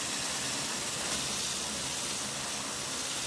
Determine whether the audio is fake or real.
real